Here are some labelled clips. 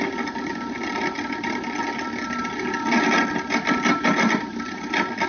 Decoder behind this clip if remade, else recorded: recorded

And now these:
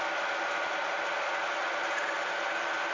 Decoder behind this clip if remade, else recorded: recorded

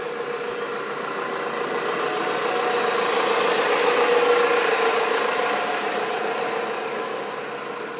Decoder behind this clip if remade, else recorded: recorded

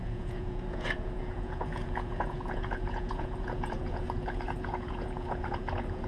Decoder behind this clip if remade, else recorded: remade, vocoder, Vocos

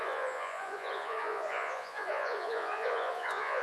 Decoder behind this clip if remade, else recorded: remade, vocoder, Vocos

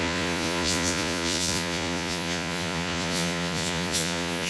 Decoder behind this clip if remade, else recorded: remade, vocoder, Vocos